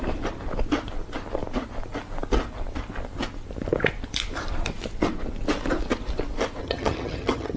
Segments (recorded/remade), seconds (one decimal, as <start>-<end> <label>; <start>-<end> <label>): 0.0-6.6 recorded; 6.6-7.6 remade